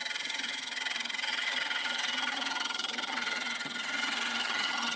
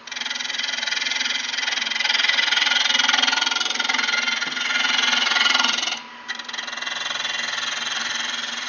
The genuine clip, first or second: second